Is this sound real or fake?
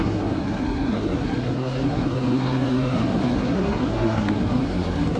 fake